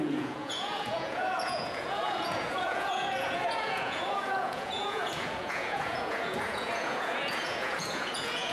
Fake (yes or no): yes